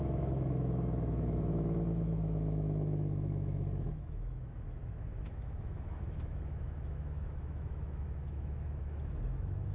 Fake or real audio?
fake